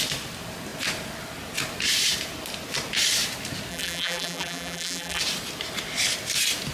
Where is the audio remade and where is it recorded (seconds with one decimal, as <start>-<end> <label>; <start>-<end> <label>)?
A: 0.0-3.7 recorded; 3.7-5.2 remade; 5.2-6.7 recorded